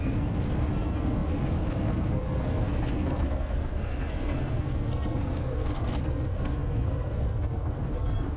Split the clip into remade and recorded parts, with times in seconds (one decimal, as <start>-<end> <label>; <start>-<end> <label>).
0.0-8.4 remade